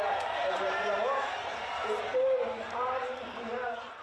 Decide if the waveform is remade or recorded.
remade